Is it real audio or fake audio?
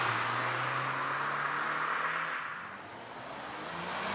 real